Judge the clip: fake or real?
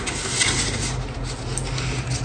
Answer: real